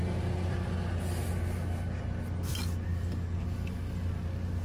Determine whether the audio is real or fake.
real